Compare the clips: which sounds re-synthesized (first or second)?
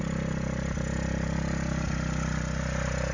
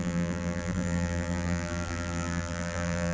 second